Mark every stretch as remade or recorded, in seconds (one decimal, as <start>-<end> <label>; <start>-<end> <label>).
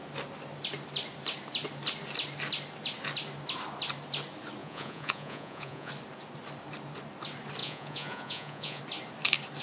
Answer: 0.0-4.6 recorded; 4.6-5.9 remade; 5.9-7.6 recorded; 7.6-8.8 remade; 8.8-9.6 recorded